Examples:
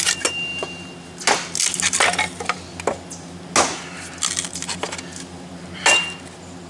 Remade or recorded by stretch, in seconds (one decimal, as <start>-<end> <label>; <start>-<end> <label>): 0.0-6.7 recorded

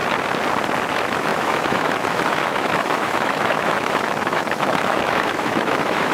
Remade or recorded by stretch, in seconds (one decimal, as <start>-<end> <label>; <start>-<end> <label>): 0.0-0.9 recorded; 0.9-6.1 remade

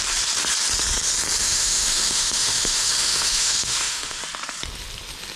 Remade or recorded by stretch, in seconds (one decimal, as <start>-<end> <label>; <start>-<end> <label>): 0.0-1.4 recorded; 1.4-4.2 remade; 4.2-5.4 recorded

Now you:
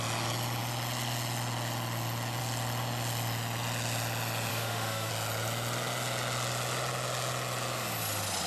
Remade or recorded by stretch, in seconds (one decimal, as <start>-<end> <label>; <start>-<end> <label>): 0.0-4.5 recorded; 4.5-5.1 remade; 5.1-8.5 recorded

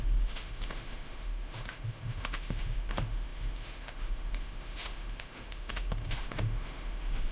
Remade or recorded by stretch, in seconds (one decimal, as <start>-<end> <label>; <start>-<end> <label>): 0.0-7.3 remade